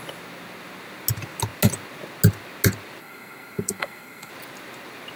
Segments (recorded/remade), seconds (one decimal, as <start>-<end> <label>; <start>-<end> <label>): 0.0-3.0 recorded; 3.0-4.3 remade; 4.3-5.2 recorded